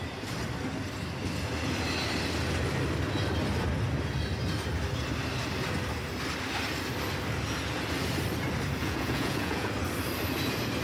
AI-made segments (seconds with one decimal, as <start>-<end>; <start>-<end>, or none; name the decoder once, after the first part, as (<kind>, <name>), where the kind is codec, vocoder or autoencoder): 8.8-9.7 (vocoder, Vocos)